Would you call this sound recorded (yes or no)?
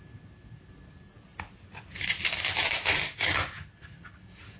yes